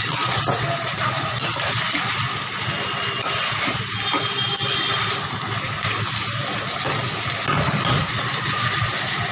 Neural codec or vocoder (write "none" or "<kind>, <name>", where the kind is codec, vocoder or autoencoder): none